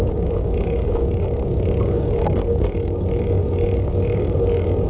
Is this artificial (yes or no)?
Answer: yes